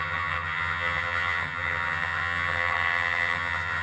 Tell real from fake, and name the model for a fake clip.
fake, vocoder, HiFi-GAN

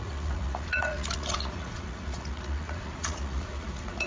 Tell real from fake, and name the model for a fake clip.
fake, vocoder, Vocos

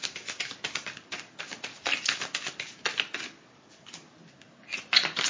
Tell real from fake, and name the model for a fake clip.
real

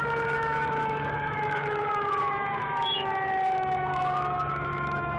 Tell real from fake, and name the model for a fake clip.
fake, autoencoder, DAC-VAE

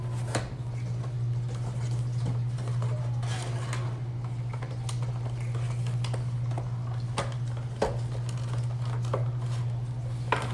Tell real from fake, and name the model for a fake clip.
real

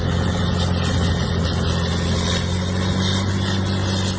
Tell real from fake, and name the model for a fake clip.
real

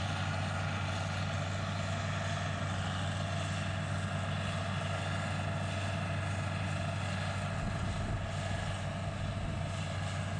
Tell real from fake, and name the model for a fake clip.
real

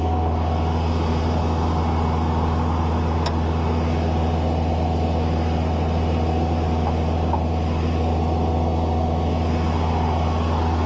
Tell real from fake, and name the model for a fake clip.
real